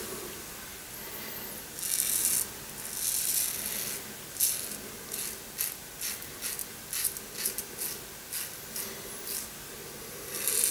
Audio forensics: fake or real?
real